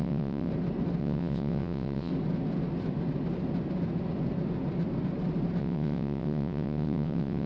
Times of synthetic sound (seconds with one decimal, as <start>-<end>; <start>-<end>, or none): 0.0-0.5; 1.0-2.1; 5.6-7.5